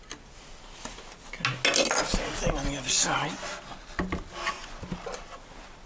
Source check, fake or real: real